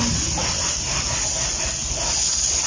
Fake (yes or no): no